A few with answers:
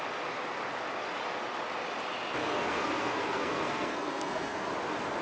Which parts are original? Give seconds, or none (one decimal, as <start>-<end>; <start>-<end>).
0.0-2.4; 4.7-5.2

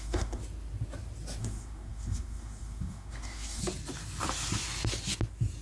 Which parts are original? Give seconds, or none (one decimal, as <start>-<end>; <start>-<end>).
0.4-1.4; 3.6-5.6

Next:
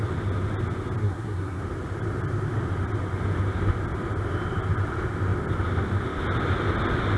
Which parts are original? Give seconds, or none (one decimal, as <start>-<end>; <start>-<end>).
0.0-1.0; 1.6-7.2

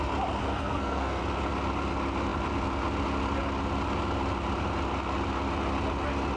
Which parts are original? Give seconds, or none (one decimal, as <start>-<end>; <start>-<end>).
0.0-0.4; 1.2-6.4